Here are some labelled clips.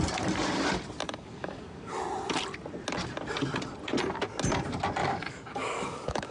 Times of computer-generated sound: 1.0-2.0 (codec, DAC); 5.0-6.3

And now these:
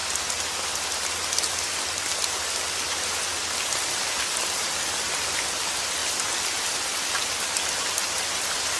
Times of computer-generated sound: none

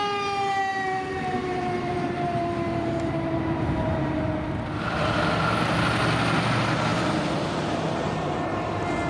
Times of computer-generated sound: 0.7-4.3 (vocoder, BigVGAN v2); 6.9-8.7

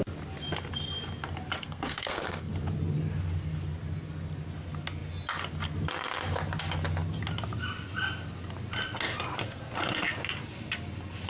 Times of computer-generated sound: 1.6-2.5 (codec, SNAC)